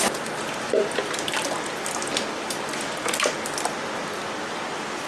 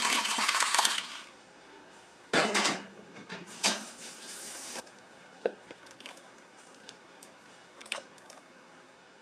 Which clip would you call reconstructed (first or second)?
second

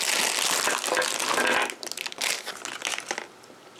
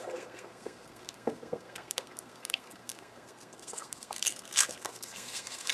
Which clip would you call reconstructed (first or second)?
second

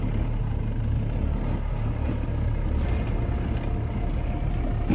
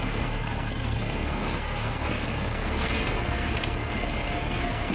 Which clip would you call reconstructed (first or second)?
second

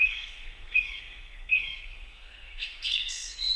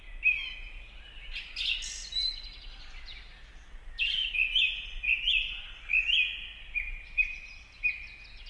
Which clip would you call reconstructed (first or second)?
first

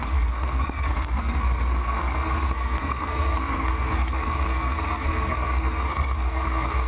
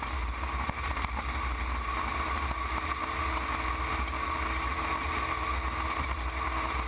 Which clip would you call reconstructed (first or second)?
first